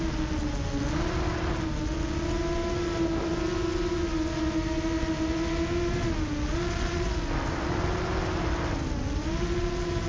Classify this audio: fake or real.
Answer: real